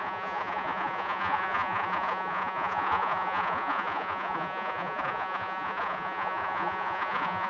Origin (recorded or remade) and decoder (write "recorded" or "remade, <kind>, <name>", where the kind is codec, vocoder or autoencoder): remade, vocoder, Vocos